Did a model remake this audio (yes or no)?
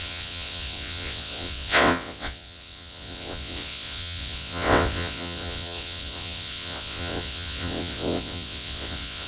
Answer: yes